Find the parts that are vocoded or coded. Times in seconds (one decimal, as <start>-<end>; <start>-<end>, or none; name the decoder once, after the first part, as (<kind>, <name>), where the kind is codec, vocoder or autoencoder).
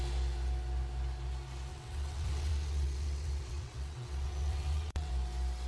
1.7-5.1 (vocoder, WaveNeXt)